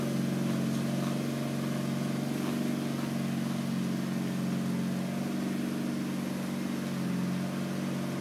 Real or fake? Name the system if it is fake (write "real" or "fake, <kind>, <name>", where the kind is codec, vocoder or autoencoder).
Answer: real